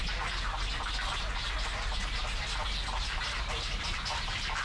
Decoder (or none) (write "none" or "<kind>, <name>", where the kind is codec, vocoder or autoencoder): none